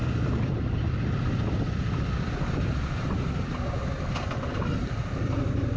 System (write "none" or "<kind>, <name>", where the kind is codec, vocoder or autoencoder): none